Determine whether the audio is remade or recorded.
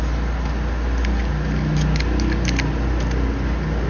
recorded